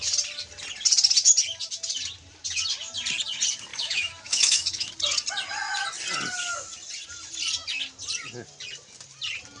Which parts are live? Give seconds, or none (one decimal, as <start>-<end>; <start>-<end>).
0.0-3.7; 4.9-9.6